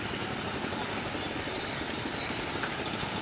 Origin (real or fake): real